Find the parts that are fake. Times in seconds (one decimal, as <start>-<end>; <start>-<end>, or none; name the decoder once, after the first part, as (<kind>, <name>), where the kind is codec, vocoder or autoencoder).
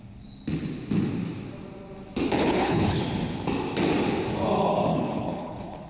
2.4-3.0 (codec, HILCodec); 4.9-5.9